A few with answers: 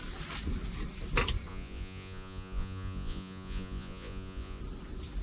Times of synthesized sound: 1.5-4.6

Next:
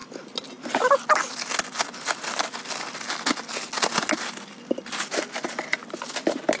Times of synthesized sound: none

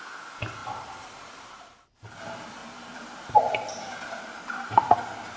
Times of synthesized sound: 0.6-2.2; 2.6-5.0

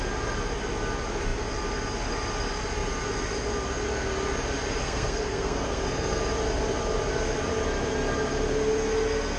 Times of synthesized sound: 4.8-6.2

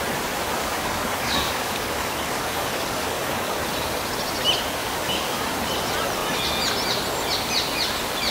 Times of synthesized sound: 0.6-3.6; 4.8-5.4

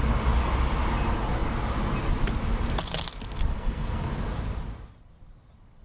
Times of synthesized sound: 3.5-4.1